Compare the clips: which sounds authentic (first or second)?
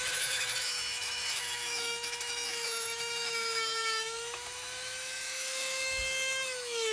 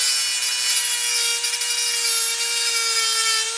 second